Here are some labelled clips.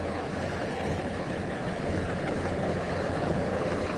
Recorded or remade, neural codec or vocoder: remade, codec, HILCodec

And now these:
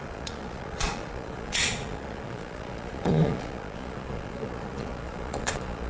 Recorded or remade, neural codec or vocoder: remade, vocoder, Vocos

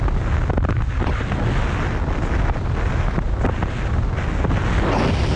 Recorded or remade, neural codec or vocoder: recorded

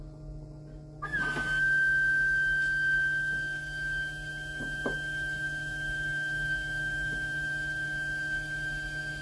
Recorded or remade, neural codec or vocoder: recorded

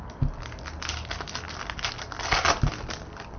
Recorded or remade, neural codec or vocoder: recorded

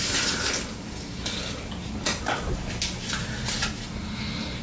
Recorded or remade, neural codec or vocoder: recorded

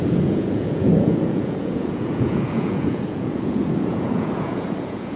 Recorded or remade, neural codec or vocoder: remade, vocoder, Vocos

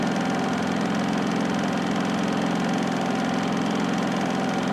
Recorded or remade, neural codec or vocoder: recorded